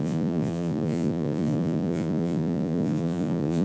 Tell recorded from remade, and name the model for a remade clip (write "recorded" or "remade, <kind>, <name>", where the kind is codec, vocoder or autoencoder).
remade, vocoder, Vocos